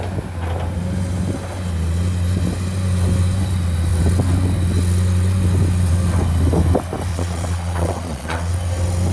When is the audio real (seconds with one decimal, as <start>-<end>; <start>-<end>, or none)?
0.0-7.1; 8.5-9.1